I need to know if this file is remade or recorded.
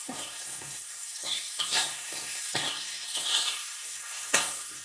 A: remade